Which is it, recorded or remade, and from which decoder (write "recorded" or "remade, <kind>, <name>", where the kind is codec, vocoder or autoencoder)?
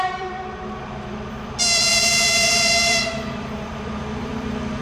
remade, vocoder, BigVGAN v2